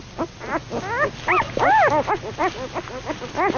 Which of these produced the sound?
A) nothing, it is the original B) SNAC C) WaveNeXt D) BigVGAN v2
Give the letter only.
A